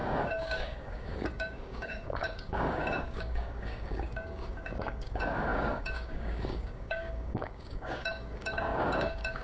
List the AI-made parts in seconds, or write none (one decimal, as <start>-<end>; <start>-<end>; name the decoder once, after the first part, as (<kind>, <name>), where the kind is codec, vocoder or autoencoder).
0.0-9.4 (codec, DAC)